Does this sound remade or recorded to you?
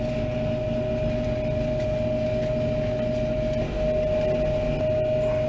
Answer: recorded